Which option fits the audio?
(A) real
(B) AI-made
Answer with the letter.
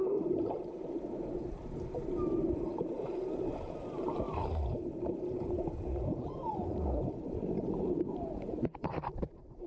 B